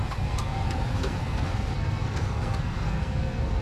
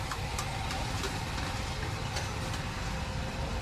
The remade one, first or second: first